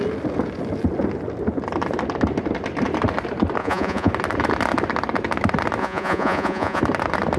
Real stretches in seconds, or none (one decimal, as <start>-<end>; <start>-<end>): 0.0-3.6; 4.1-5.8; 6.8-7.4

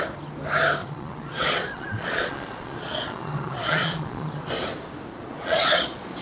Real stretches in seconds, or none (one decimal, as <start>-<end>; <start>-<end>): 0.0-0.8; 4.5-5.1

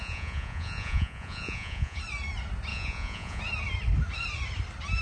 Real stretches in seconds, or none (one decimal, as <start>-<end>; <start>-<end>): 2.0-2.7; 3.4-5.0

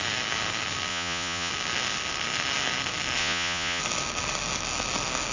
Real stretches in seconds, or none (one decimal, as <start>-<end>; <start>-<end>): 0.0-0.9; 1.5-3.2; 3.8-5.3

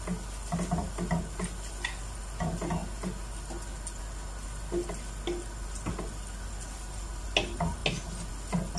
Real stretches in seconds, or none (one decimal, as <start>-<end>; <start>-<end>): 0.0-8.8

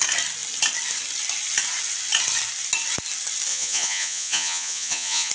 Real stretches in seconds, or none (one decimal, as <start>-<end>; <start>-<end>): 0.0-3.5

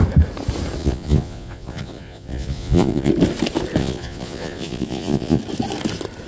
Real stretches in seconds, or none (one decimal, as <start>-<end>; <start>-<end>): 0.0-0.8; 3.1-3.8; 5.4-6.3

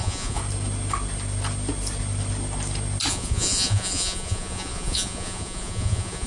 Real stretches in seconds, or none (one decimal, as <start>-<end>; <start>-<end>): 0.4-3.1